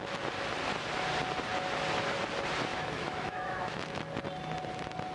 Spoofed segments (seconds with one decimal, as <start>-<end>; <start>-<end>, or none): 2.7-4.0